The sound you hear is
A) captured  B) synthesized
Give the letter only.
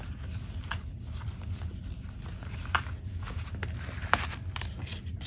A